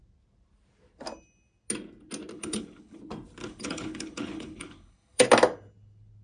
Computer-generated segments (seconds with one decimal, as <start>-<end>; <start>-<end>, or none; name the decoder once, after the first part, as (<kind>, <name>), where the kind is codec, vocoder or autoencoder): 2.3-3.0 (codec, HILCodec); 3.4-5.2